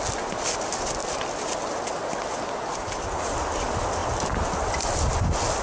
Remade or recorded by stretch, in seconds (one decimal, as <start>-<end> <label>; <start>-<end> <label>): 0.0-5.6 recorded